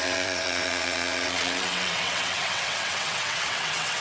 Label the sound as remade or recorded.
remade